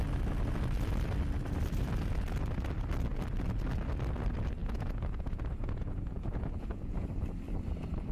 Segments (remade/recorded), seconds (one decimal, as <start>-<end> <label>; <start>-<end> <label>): 0.0-4.6 recorded; 4.6-7.1 remade; 7.1-8.1 recorded

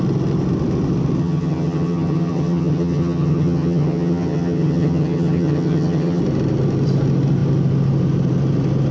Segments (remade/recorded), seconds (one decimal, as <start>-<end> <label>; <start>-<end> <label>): 0.0-1.2 recorded; 1.2-6.2 remade; 6.2-8.9 recorded